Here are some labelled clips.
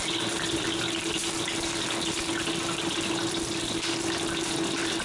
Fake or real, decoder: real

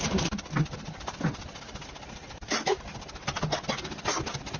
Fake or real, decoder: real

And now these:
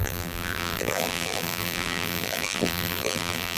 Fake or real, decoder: fake, vocoder, BigVGAN v2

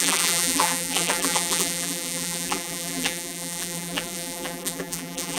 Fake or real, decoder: fake, vocoder, BigVGAN v2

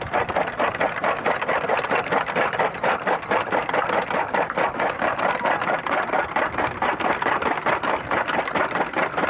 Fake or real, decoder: real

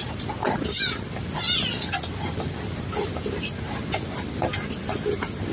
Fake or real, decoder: real